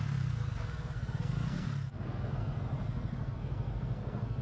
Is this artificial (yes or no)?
yes